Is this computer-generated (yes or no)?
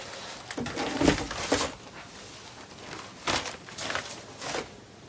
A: no